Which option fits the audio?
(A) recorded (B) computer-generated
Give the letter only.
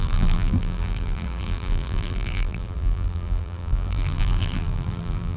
B